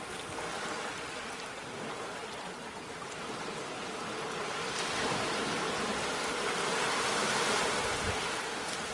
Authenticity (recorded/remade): recorded